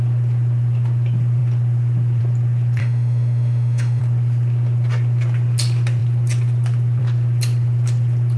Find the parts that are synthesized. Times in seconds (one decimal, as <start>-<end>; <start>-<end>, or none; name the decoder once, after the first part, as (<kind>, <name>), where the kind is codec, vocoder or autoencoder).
2.8-4.0 (autoencoder, DAC-VAE)